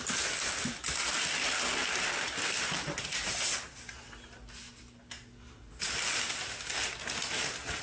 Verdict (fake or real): real